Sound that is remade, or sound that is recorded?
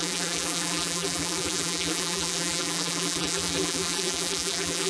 remade